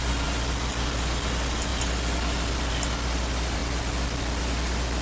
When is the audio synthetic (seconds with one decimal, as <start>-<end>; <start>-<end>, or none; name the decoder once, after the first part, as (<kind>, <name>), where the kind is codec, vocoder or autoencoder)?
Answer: none